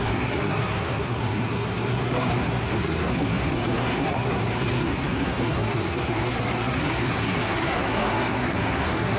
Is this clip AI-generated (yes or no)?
yes